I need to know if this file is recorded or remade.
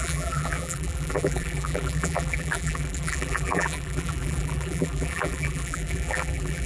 remade